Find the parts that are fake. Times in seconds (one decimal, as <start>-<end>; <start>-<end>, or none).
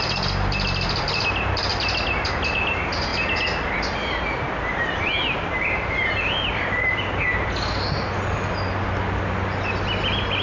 none